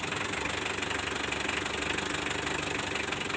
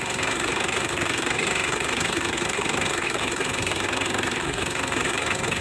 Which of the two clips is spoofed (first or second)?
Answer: second